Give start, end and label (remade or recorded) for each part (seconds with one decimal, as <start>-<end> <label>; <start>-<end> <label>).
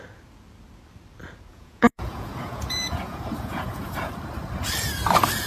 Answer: 0.0-1.5 recorded; 1.5-4.1 remade; 4.1-5.5 recorded